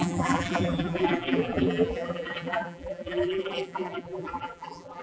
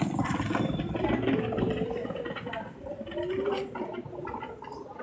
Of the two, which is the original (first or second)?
second